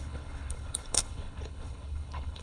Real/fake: fake